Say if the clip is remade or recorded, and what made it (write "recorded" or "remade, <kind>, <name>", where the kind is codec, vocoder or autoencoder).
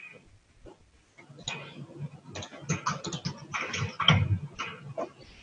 recorded